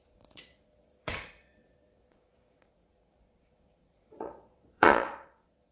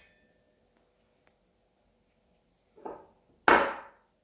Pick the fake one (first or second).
first